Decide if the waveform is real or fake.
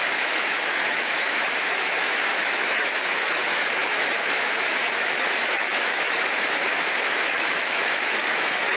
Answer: fake